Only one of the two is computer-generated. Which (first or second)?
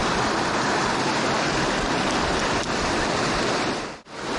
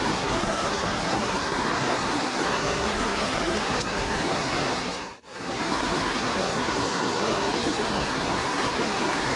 second